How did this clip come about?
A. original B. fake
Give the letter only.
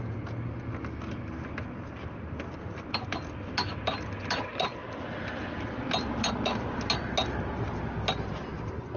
A